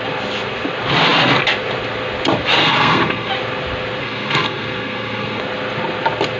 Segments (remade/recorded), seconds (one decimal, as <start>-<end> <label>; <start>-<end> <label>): 0.0-2.6 recorded; 2.6-3.3 remade; 3.3-4.0 recorded; 4.0-5.4 remade; 5.4-6.4 recorded